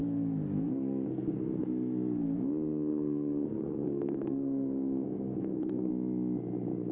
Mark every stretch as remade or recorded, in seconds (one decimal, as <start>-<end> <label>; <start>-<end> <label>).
0.0-2.5 remade; 2.5-2.9 recorded; 2.9-5.9 remade; 5.9-6.9 recorded